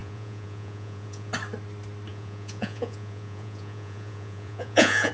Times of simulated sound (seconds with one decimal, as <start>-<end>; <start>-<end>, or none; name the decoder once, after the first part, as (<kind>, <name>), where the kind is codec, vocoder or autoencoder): 0.0-1.3 (vocoder, Vocos); 2.1-5.1